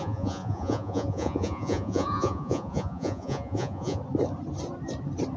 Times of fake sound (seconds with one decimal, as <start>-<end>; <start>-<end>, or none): 0.0-4.0